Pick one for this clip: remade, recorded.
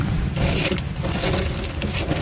recorded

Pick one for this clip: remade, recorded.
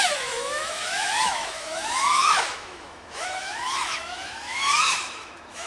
remade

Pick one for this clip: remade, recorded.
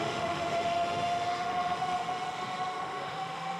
remade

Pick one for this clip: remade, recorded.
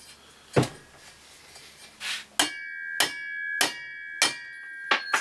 recorded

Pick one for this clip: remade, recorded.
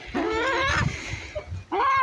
recorded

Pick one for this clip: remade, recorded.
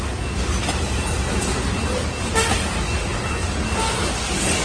recorded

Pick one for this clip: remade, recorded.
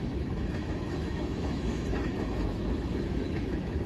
remade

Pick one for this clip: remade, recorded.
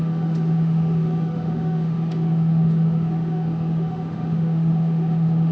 remade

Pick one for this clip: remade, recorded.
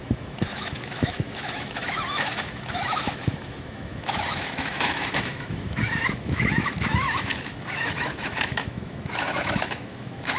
remade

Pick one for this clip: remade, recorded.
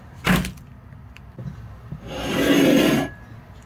recorded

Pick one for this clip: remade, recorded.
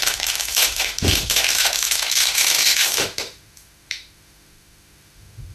remade